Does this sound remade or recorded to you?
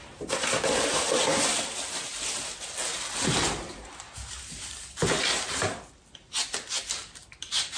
recorded